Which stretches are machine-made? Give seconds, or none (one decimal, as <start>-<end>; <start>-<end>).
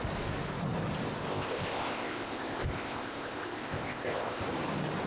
1.3-4.4